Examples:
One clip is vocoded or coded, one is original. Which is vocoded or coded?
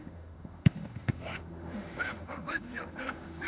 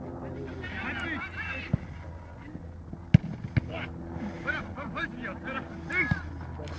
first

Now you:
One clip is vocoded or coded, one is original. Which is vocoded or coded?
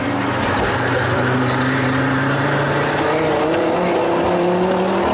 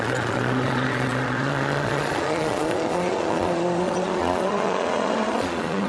second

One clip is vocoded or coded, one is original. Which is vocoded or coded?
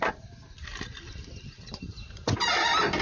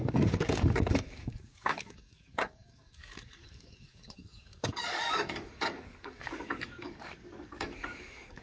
second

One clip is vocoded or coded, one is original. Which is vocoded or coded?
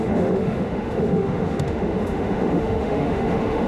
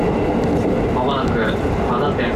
first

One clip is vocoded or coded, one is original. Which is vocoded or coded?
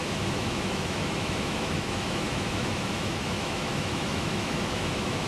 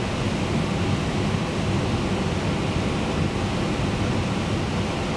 first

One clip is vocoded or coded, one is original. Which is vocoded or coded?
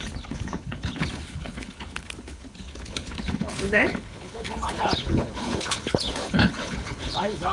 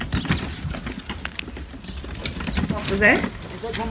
first